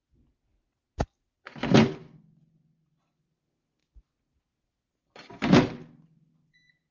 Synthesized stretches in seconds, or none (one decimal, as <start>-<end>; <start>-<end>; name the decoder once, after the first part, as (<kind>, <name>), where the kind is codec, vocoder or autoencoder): none